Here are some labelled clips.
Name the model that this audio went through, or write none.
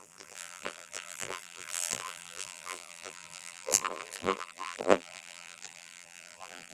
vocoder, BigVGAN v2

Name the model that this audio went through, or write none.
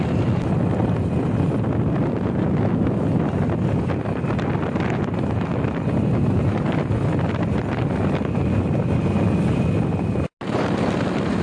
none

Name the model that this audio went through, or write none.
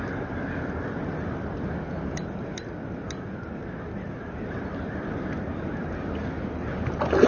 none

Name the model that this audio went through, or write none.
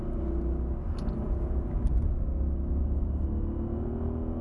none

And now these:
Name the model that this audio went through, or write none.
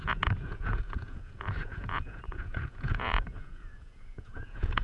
vocoder, Vocos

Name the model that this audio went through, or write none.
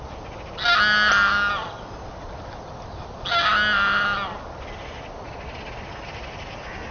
none